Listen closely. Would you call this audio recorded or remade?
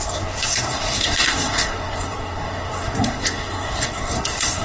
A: remade